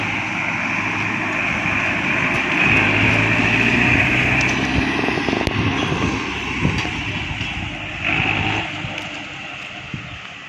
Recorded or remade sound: recorded